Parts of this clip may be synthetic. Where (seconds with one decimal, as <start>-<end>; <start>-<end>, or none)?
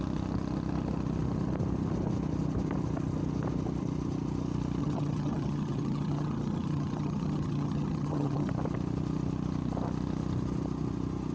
4.8-8.5